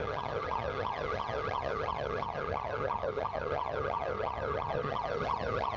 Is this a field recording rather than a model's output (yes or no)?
no